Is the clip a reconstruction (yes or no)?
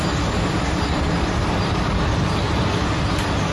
no